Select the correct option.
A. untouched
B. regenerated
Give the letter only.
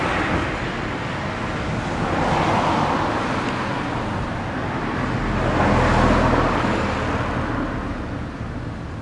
A